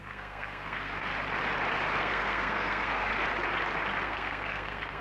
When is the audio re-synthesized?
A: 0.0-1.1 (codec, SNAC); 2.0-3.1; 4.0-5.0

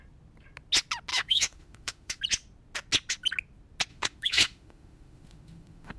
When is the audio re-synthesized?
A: 1.1-2.2 (autoencoder, DAC-VAE); 3.9-6.0

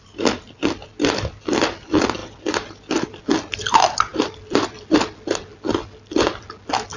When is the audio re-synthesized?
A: 2.2-3.2 (vocoder, BigVGAN v2)